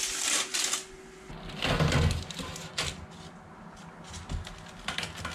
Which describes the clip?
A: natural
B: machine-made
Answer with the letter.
A